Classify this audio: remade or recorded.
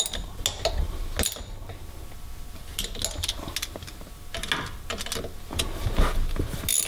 recorded